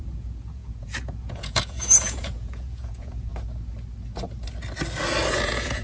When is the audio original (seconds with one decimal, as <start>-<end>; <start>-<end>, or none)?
3.3-5.3